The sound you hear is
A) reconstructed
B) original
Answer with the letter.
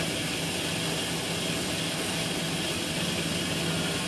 B